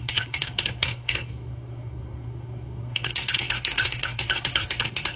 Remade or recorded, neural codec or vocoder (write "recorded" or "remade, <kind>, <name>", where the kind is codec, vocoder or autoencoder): remade, codec, SNAC